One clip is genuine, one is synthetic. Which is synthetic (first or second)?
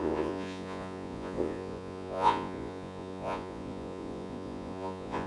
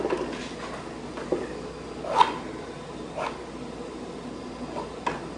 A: first